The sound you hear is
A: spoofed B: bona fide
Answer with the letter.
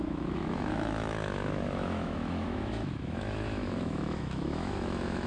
A